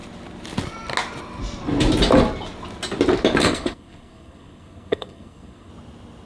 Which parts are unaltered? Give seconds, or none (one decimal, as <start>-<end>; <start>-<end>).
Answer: 0.0-3.4; 5.7-6.3